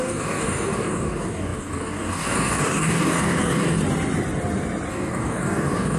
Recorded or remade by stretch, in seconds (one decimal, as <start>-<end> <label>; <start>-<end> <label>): 0.0-3.8 remade; 3.8-4.9 recorded; 4.9-6.0 remade